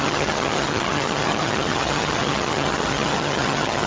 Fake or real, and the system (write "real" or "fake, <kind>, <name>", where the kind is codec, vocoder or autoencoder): fake, vocoder, HiFi-GAN